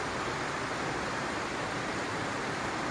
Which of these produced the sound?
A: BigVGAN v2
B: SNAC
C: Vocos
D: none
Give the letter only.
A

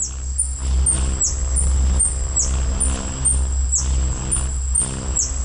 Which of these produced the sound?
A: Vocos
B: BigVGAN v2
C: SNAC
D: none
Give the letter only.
D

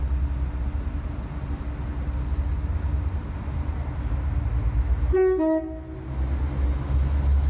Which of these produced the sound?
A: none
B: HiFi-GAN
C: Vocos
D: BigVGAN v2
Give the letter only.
A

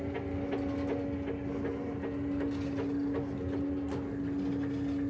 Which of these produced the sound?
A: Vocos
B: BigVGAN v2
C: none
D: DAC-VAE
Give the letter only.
C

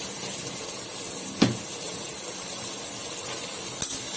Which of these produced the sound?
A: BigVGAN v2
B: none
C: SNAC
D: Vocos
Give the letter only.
B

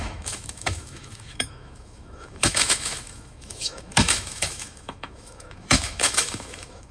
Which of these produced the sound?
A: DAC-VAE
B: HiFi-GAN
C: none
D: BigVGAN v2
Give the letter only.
A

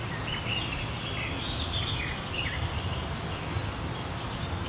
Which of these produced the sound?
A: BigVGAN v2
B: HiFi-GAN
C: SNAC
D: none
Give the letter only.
D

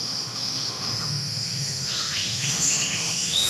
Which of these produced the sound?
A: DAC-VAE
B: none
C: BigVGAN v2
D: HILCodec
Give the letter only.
A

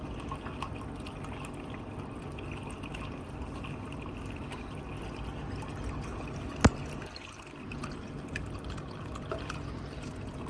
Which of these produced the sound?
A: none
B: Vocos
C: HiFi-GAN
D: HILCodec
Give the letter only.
A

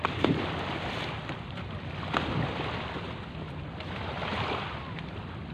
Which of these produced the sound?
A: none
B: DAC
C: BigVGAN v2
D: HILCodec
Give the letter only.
C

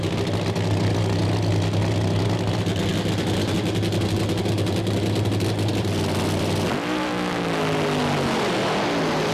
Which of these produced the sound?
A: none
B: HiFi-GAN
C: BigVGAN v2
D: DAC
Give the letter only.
A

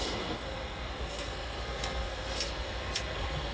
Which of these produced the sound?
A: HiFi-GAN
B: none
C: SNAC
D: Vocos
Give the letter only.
C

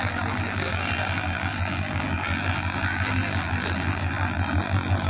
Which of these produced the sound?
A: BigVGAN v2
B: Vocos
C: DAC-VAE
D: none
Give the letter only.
A